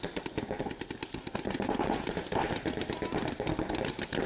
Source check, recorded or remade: recorded